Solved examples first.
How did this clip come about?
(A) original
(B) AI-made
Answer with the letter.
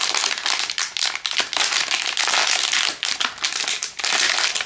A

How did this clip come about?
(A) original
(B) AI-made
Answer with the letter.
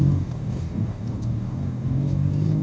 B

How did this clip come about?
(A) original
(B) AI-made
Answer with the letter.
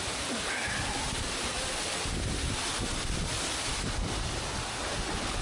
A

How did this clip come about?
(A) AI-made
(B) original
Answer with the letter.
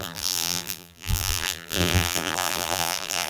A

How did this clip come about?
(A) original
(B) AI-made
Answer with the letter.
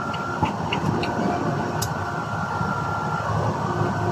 A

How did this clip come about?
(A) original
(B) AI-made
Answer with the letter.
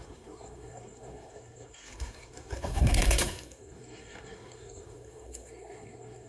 B